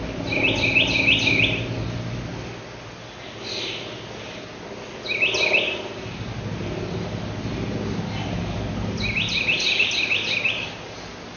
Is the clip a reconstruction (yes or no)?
no